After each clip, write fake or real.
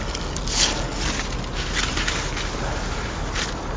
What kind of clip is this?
real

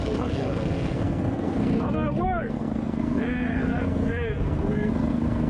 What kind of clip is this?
fake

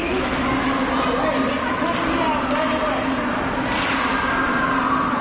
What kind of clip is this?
real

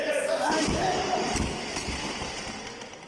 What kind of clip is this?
real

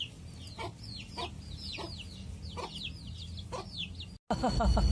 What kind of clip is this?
real